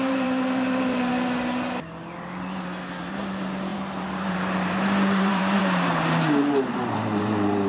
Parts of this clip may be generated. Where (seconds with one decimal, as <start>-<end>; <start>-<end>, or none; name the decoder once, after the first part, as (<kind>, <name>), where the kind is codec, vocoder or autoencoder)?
0.0-1.1 (vocoder, BigVGAN v2); 3.1-7.7